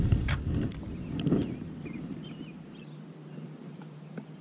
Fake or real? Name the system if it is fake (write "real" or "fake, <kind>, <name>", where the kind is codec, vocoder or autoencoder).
fake, vocoder, BigVGAN v2